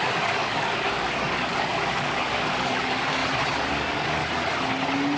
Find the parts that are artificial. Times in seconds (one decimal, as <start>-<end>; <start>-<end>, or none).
0.0-3.2; 3.7-4.2